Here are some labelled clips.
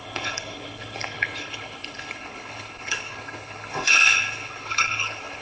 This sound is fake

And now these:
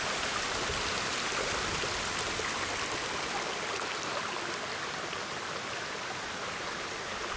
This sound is real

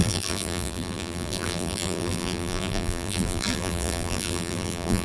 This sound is fake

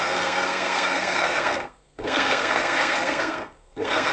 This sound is fake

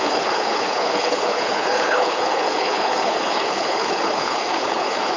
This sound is fake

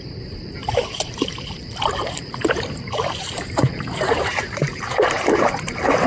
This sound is fake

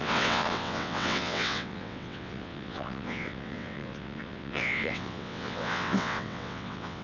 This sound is fake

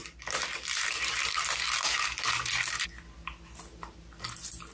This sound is real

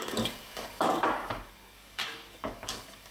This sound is fake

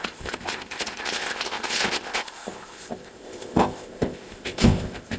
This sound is fake